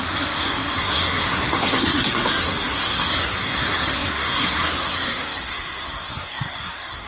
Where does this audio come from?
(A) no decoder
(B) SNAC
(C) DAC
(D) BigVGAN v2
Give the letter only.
B